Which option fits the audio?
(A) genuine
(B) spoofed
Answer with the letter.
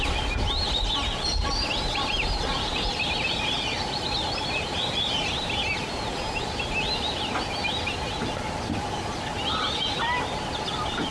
A